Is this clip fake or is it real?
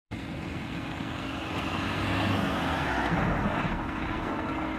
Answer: fake